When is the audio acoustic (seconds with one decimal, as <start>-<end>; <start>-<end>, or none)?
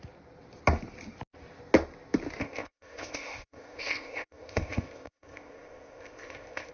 0.0-2.4